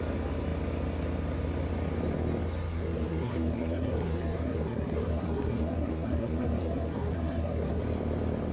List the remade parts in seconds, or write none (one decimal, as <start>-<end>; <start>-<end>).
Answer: 2.7-7.8